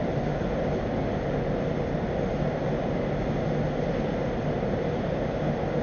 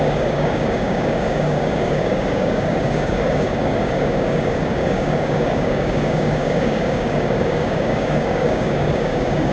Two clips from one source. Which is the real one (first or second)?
first